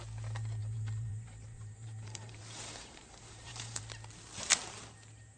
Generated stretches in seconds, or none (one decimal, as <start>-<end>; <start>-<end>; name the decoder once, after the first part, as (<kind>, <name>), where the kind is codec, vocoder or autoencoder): 0.6-3.8 (vocoder, BigVGAN v2)